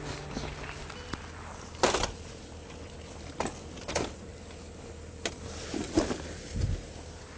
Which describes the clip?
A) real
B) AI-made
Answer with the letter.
A